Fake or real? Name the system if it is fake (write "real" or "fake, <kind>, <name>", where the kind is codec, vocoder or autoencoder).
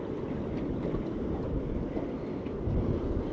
real